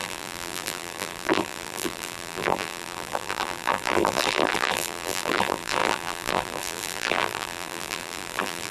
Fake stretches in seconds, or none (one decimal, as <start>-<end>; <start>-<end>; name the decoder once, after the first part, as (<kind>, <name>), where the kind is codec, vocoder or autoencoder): 0.0-8.7 (vocoder, BigVGAN v2)